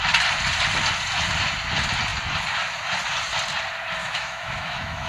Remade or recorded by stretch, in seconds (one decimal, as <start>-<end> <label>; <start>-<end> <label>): 0.0-4.0 recorded; 4.0-5.1 remade